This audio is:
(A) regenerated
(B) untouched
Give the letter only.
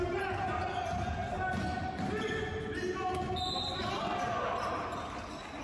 B